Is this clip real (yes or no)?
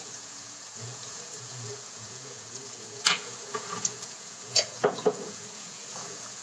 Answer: no